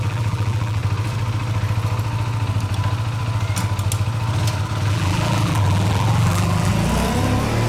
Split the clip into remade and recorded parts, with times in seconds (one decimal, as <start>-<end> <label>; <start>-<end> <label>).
0.0-0.8 remade; 0.8-4.9 recorded; 4.9-6.7 remade; 6.7-7.7 recorded